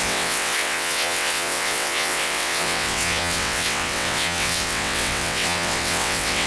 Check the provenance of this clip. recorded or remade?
remade